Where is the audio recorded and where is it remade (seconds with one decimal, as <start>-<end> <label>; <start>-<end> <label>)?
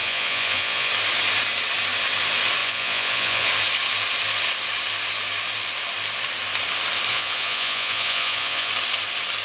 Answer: 0.0-0.9 remade; 0.9-2.6 recorded; 2.6-3.5 remade; 3.5-7.1 recorded; 7.1-8.7 remade; 8.7-9.4 recorded